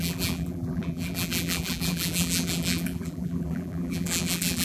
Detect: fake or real fake